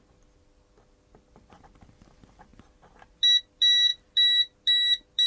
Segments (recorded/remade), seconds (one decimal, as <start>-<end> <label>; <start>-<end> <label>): 0.0-5.3 recorded